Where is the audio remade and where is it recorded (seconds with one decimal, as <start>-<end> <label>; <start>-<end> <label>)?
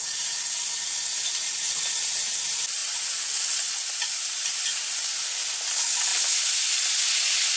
0.0-7.6 recorded